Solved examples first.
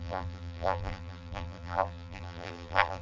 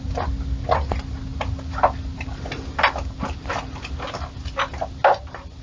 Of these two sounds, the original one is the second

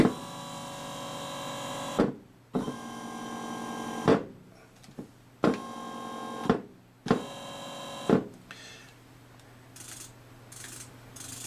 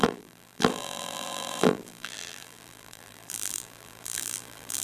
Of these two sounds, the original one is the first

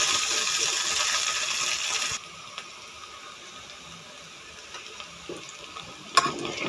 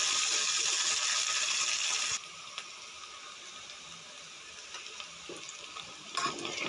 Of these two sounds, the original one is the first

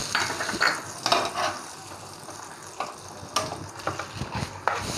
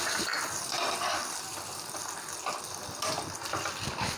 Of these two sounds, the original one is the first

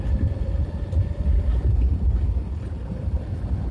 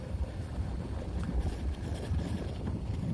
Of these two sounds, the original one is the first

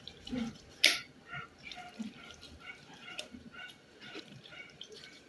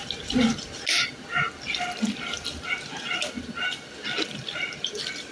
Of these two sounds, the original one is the second